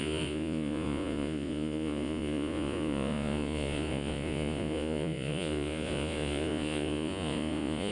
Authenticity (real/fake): fake